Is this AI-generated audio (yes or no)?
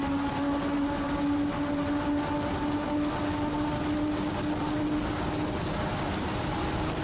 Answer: no